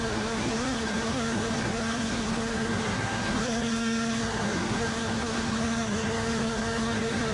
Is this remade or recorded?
remade